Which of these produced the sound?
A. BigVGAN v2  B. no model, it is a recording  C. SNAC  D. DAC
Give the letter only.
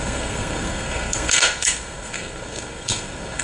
C